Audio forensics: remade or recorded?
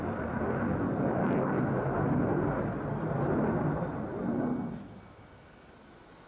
recorded